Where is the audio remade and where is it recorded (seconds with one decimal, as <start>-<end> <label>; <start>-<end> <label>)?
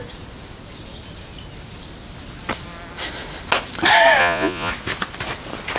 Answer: 0.0-4.2 recorded; 4.2-4.7 remade; 4.7-5.8 recorded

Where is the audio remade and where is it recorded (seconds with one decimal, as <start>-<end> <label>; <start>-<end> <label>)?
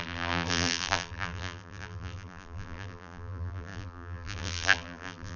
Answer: 0.0-5.4 remade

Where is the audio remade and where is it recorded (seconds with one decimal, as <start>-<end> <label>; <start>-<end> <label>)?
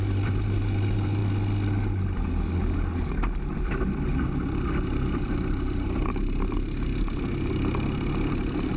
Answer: 0.0-1.2 remade; 1.2-4.9 recorded; 4.9-6.9 remade; 6.9-8.3 recorded; 8.3-8.8 remade